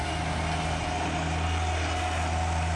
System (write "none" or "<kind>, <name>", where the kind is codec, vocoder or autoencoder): none